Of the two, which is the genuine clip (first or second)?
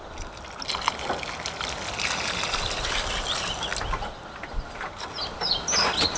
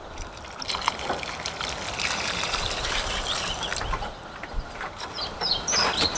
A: first